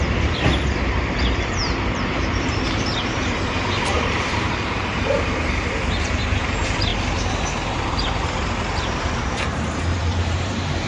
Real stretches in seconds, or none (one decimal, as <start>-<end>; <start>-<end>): 6.9-7.7